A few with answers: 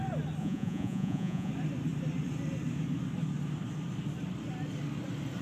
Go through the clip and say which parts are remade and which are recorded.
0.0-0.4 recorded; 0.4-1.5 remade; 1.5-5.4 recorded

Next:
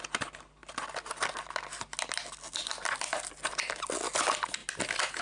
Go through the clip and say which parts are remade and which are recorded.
0.0-5.2 recorded

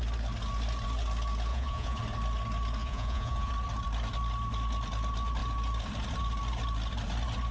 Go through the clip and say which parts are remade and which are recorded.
0.0-1.5 recorded; 1.5-2.0 remade; 2.0-2.8 recorded; 2.8-3.5 remade; 3.5-7.5 recorded

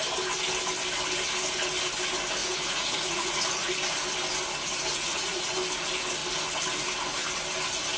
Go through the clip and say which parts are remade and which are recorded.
0.0-2.4 recorded; 2.4-3.7 remade; 3.7-4.9 recorded; 4.9-5.5 remade; 5.5-8.0 recorded